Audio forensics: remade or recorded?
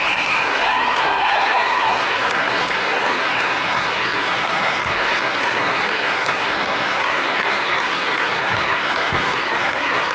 remade